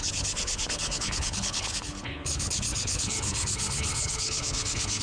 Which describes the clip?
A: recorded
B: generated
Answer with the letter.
B